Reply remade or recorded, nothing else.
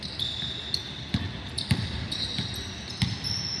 recorded